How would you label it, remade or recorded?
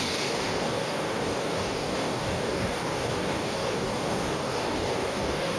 remade